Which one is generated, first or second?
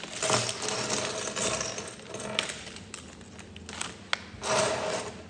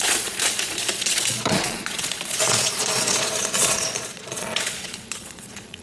second